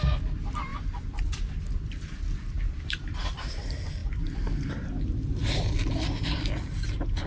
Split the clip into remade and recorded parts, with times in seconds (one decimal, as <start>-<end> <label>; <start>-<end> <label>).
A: 0.0-0.7 recorded; 0.7-3.5 remade; 3.5-4.0 recorded; 4.0-4.7 remade; 4.7-5.4 recorded; 5.4-7.3 remade